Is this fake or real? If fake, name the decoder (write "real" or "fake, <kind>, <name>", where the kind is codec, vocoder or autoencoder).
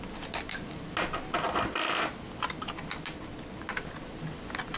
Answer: real